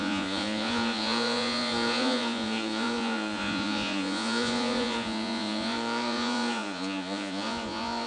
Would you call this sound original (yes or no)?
no